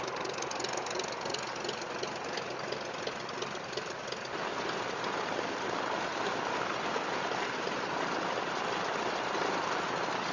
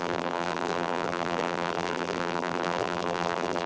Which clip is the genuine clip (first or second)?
first